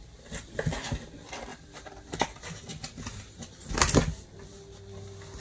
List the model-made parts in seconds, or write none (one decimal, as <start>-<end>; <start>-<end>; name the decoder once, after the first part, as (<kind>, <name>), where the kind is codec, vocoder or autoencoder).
1.5-3.7 (vocoder, BigVGAN v2)